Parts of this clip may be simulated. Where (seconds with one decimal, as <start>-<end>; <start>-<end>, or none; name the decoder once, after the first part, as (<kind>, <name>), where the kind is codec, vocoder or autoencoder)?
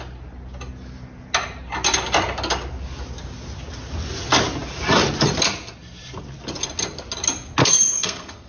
7.6-8.5 (codec, SNAC)